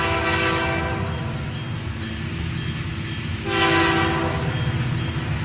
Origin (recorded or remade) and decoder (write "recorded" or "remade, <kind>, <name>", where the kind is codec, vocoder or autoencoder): recorded